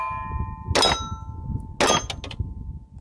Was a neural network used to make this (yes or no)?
no